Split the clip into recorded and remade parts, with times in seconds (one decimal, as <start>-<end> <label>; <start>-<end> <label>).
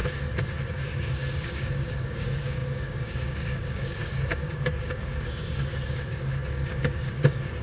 0.0-0.7 recorded; 0.7-7.6 remade